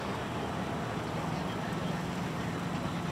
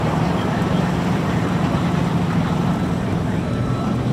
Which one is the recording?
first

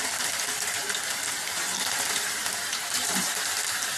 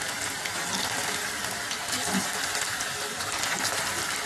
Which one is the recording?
second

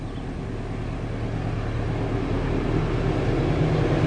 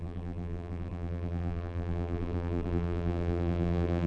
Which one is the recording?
first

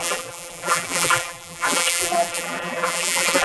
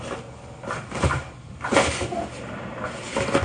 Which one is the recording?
second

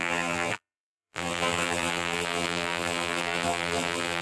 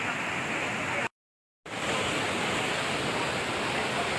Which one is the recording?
second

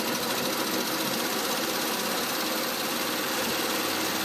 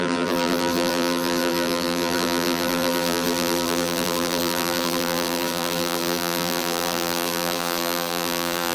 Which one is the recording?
first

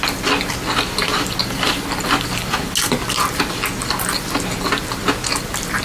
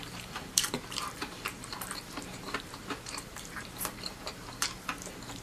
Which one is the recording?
first